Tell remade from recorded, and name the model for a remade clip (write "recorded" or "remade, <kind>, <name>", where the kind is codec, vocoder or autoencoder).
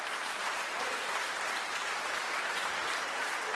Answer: remade, vocoder, BigVGAN v2